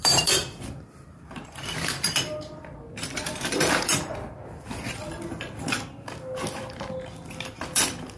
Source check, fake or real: fake